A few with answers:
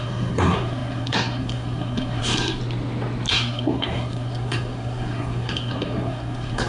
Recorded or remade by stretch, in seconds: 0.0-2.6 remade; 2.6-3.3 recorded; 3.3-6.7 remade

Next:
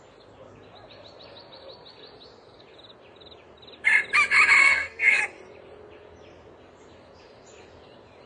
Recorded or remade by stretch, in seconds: 0.0-4.6 recorded; 4.6-5.2 remade; 5.2-8.3 recorded

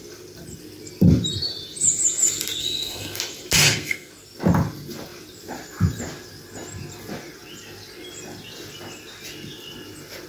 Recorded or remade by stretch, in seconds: 0.0-2.6 recorded; 2.6-3.2 remade; 3.2-3.6 recorded; 3.6-4.1 remade; 4.1-10.3 recorded

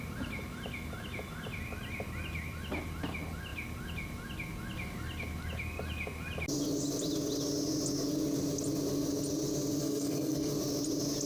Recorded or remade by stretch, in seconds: 0.0-9.8 recorded; 9.8-10.5 remade; 10.5-11.3 recorded

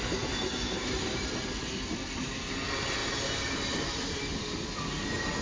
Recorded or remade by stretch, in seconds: 0.0-5.4 recorded

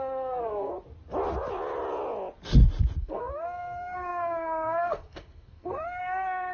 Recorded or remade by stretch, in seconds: 0.0-0.7 remade; 0.7-3.0 recorded; 3.0-6.5 remade

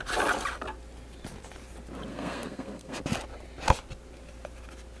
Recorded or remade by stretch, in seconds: 0.0-2.1 recorded; 2.1-3.0 remade; 3.0-5.0 recorded